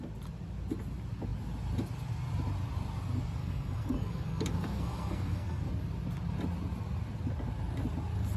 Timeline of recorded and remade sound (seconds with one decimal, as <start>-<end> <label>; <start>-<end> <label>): 0.0-3.4 recorded; 3.4-5.7 remade; 5.7-8.4 recorded